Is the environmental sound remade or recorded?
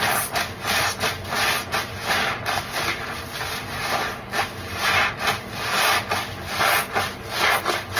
recorded